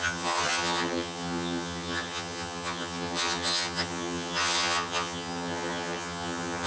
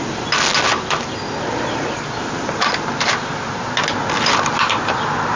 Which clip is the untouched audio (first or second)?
second